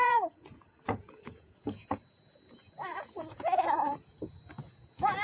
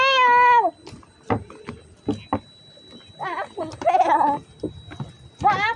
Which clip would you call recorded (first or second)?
second